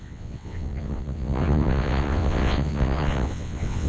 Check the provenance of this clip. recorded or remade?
remade